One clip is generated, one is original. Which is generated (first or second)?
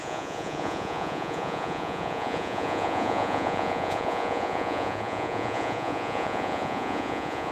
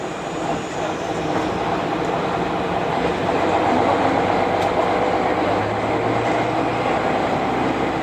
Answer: first